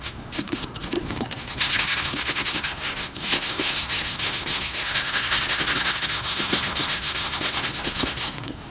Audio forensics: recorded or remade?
remade